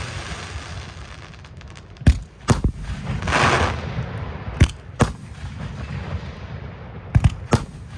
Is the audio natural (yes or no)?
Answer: yes